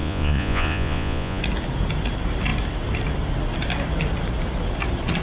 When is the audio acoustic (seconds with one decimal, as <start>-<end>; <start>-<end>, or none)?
1.4-5.2